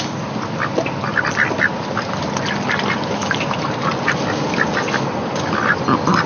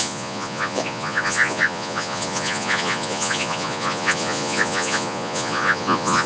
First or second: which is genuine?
first